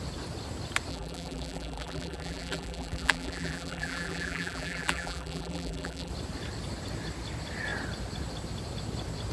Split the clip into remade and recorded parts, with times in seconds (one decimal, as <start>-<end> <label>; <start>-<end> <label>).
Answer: 0.0-0.9 recorded; 0.9-6.1 remade; 6.1-9.3 recorded

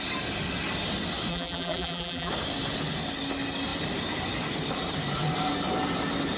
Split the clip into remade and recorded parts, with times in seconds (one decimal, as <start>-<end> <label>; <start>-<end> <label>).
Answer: 0.0-1.3 recorded; 1.3-2.3 remade; 2.3-6.4 recorded